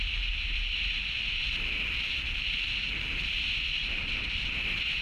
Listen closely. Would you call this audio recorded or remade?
recorded